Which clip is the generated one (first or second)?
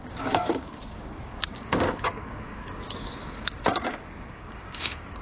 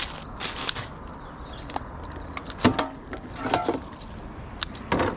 first